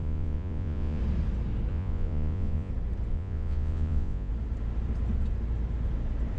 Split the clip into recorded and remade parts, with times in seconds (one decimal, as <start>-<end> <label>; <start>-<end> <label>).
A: 0.0-1.0 remade; 1.0-1.7 recorded; 1.7-2.7 remade; 2.7-3.1 recorded; 3.1-4.3 remade; 4.3-6.4 recorded